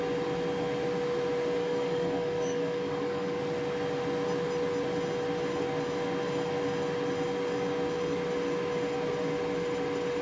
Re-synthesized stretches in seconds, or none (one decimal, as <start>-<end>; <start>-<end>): 1.6-3.4